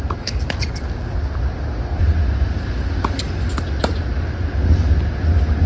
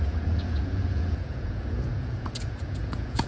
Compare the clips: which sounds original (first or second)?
first